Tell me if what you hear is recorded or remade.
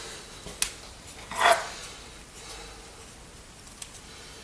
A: recorded